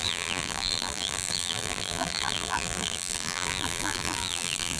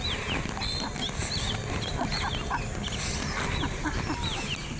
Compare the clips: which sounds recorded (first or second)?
second